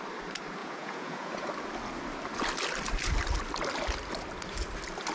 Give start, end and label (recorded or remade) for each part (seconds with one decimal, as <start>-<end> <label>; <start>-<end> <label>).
0.0-0.6 recorded; 0.6-1.5 remade; 1.5-5.1 recorded

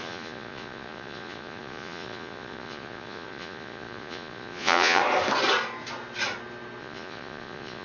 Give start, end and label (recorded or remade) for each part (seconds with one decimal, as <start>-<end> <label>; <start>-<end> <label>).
0.0-5.0 remade; 5.0-6.8 recorded; 6.8-7.8 remade

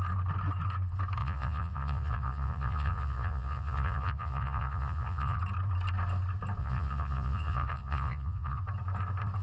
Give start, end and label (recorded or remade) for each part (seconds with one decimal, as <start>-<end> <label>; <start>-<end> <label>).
0.0-1.2 recorded; 1.2-5.4 remade; 5.4-6.6 recorded; 6.6-8.6 remade; 8.6-9.4 recorded

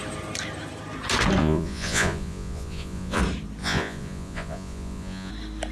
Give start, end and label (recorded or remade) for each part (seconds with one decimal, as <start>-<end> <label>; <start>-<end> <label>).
0.0-1.4 recorded; 1.4-3.2 remade; 3.2-3.6 recorded; 3.6-5.3 remade; 5.3-5.7 recorded

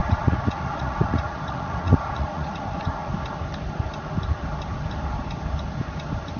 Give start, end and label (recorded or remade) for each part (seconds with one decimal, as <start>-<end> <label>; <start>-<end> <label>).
0.0-3.1 remade; 3.1-6.4 recorded

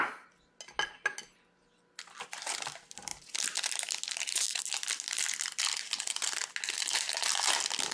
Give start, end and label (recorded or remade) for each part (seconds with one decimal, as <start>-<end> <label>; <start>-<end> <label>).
0.0-7.9 recorded